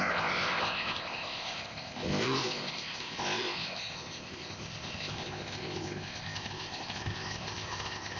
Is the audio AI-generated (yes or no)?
yes